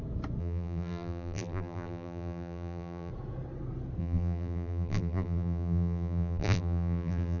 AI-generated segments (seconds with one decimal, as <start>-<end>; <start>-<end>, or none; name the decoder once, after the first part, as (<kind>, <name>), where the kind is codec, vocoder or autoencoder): 0.4-3.1 (vocoder, BigVGAN v2); 4.0-7.4

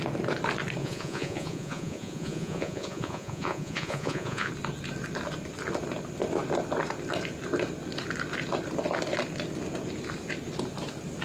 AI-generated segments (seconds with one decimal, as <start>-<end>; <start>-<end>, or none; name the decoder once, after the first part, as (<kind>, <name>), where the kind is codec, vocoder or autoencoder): 0.8-4.5 (vocoder, Vocos)